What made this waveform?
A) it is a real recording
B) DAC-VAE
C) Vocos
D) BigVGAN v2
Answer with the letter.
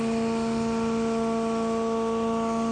A